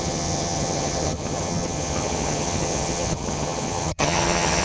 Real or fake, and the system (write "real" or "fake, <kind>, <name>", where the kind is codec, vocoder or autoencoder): fake, vocoder, HiFi-GAN